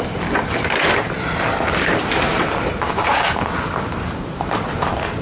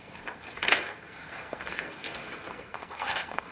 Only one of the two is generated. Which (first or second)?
second